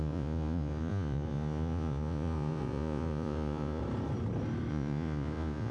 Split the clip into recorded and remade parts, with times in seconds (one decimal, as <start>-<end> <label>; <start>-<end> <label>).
0.0-3.8 remade; 3.8-4.7 recorded; 4.7-5.7 remade